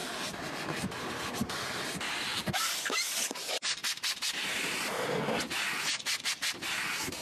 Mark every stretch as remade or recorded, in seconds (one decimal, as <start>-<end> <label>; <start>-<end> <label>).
0.0-1.1 remade; 1.1-2.3 recorded; 2.3-2.9 remade; 2.9-7.2 recorded